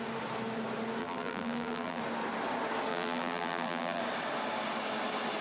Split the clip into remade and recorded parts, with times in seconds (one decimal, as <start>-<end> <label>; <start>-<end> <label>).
0.0-1.0 recorded; 1.0-2.0 remade; 2.0-2.9 recorded; 2.9-4.0 remade; 4.0-5.4 recorded